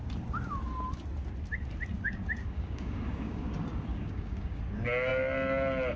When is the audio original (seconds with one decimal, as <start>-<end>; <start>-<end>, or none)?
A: 0.0-2.4; 3.5-3.9; 4.6-6.0